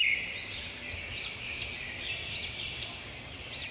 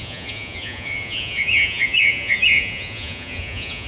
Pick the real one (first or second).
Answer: first